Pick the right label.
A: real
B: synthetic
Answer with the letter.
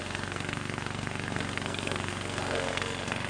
B